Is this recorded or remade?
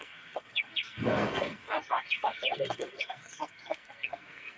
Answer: remade